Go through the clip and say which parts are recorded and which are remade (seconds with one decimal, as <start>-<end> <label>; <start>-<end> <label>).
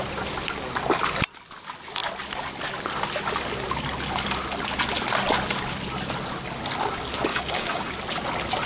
0.0-7.3 recorded; 7.3-7.9 remade; 7.9-8.7 recorded